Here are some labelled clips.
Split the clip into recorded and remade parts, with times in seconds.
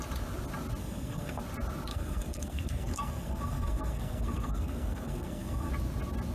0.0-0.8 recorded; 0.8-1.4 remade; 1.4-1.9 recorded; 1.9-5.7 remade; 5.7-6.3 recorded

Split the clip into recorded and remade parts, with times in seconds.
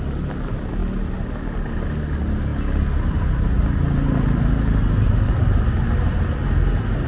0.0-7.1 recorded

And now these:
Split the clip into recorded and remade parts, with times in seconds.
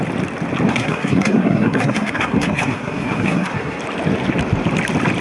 0.0-0.7 recorded; 0.7-3.8 remade; 3.8-5.2 recorded